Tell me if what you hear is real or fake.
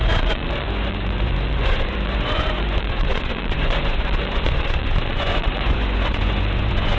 fake